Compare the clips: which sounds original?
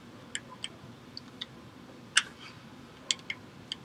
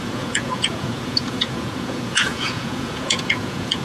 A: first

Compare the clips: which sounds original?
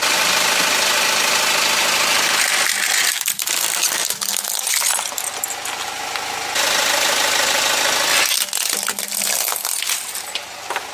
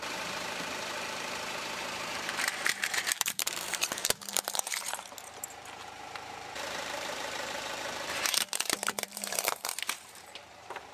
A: first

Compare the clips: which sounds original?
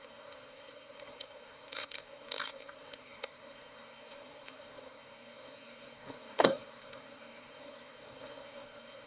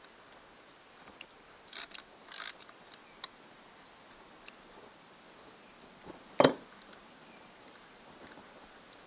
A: second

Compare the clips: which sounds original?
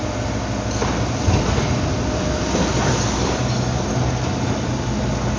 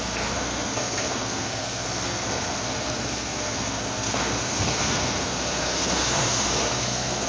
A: first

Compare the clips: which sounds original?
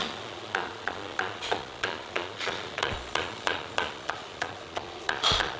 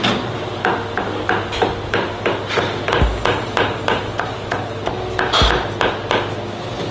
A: second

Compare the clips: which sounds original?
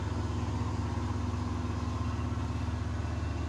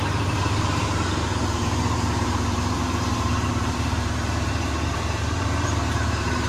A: first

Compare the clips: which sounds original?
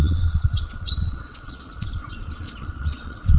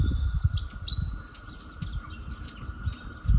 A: second